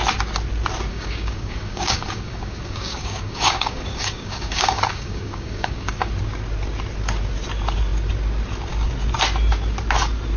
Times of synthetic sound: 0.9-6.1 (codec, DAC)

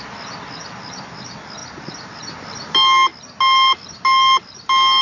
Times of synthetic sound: none

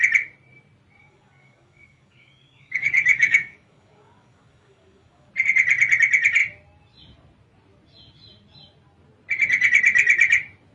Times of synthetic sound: 1.0-5.3 (codec, DAC)

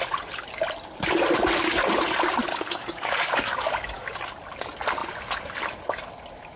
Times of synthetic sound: 2.5-4.2 (codec, DAC)

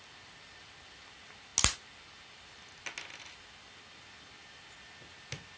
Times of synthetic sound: none